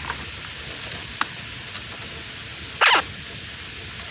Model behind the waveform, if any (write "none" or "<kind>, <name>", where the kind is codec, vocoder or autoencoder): none